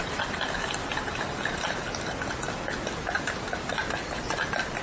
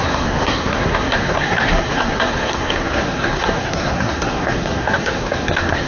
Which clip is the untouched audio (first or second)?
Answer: first